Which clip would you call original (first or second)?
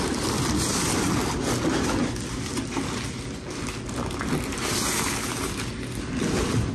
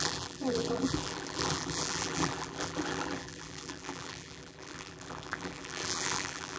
first